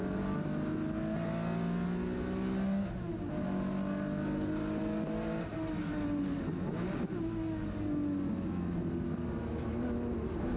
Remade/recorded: recorded